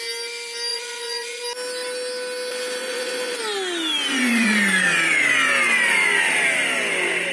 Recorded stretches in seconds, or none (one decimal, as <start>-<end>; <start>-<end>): 0.0-0.7; 1.4-2.8; 3.4-4.1; 5.2-7.3